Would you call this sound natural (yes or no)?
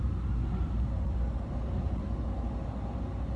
yes